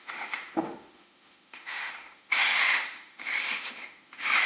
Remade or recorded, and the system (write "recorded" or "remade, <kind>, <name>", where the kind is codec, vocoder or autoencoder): remade, autoencoder, DAC-VAE